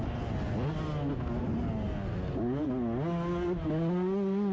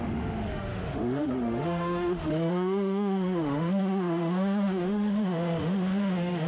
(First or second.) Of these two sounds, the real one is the first